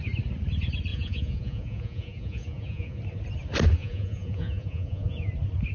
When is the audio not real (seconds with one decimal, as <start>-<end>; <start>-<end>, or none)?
0.9-3.0; 3.8-5.3